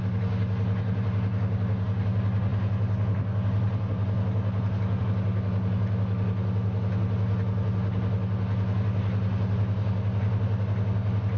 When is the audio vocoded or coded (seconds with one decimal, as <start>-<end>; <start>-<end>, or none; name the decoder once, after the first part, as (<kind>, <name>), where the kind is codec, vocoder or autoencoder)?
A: none